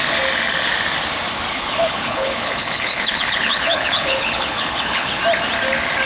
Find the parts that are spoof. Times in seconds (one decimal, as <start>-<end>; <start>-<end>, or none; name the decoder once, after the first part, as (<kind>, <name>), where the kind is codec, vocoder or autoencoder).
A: 1.5-5.2 (codec, HILCodec)